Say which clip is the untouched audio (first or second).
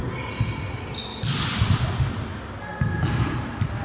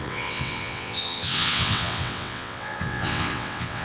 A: first